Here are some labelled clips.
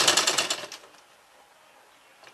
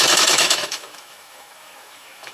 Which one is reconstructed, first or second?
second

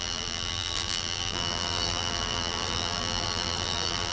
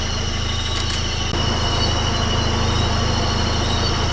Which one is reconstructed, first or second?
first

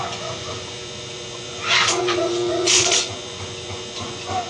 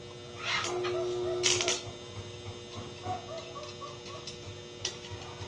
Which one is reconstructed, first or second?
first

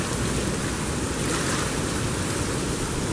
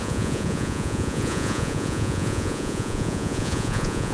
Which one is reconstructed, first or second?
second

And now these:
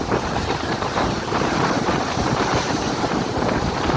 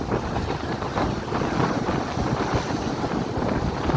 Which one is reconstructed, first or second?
first